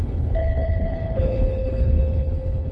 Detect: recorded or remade remade